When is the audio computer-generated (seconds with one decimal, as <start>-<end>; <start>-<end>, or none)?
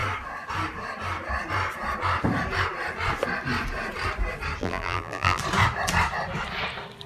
4.6-5.4